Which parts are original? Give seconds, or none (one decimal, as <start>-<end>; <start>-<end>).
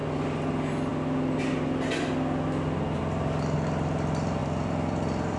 0.5-4.4